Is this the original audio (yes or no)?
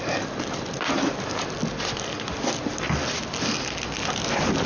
yes